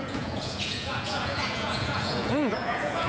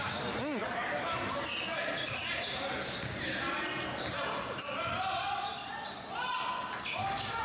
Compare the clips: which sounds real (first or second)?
second